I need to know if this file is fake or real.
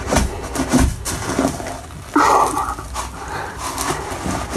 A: real